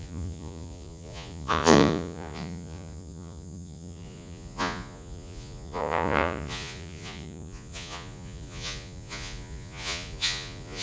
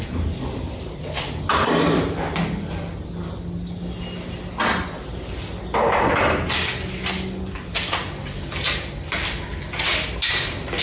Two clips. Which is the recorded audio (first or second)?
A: second